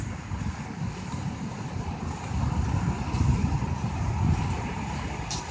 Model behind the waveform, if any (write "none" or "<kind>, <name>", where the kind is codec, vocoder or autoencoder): none